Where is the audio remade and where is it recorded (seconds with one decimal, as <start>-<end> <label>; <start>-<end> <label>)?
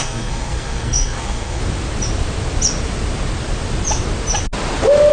0.0-1.6 remade; 1.6-5.1 recorded